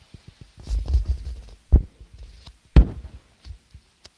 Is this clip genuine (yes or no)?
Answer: yes